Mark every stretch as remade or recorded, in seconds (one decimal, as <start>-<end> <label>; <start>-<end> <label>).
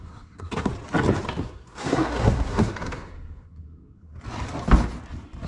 0.0-0.7 remade; 0.7-1.4 recorded; 1.4-4.1 remade; 4.1-5.5 recorded